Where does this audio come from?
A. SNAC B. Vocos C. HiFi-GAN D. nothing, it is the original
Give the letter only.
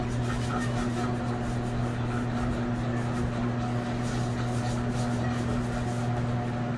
D